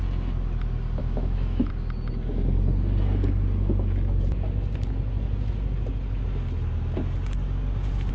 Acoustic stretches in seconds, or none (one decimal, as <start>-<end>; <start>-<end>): 0.0-1.0; 1.7-8.1